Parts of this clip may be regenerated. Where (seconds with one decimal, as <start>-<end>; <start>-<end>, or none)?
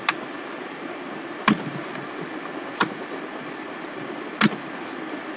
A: 0.0-1.8; 5.0-5.4